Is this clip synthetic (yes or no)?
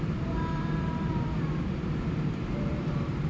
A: yes